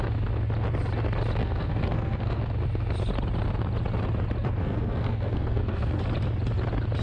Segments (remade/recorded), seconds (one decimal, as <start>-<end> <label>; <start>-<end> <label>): 0.0-1.4 recorded; 1.4-2.4 remade; 2.4-4.6 recorded; 4.6-6.0 remade; 6.0-7.0 recorded